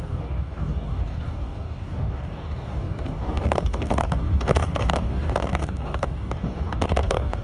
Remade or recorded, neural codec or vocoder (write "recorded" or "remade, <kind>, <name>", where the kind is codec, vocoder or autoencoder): remade, codec, DAC